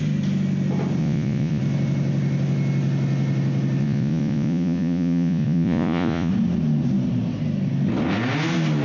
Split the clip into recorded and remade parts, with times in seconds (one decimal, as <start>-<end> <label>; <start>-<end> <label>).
0.0-1.0 recorded; 1.0-1.6 remade; 1.6-3.8 recorded; 3.8-6.3 remade; 6.3-8.8 recorded